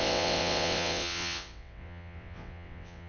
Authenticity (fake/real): fake